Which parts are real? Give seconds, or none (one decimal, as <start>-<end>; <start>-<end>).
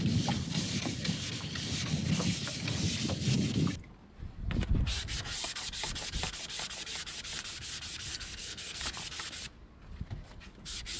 0.0-8.1; 8.8-11.0